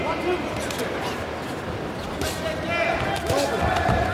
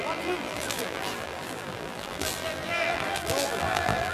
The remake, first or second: second